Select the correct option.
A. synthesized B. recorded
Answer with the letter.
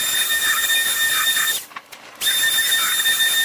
B